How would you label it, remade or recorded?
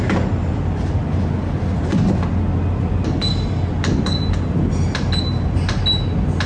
recorded